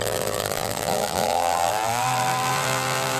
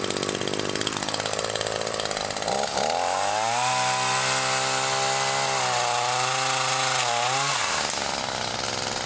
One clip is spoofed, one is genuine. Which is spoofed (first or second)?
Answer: first